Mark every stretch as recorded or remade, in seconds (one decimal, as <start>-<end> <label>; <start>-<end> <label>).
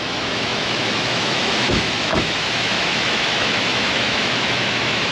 0.0-5.1 remade